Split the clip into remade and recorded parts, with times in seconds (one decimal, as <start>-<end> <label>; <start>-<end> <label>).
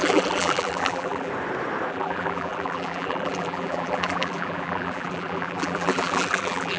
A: 0.0-1.3 remade; 1.3-1.9 recorded; 1.9-6.8 remade